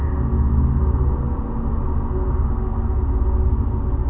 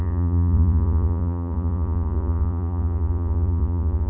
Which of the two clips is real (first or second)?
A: first